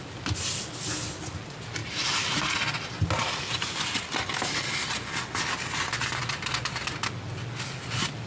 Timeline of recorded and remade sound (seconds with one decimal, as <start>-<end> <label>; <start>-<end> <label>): 0.0-8.3 recorded